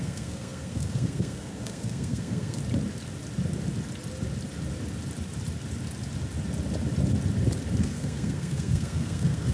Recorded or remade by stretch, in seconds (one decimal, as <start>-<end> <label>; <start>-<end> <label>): 0.0-2.6 remade; 2.6-7.8 recorded; 7.8-9.5 remade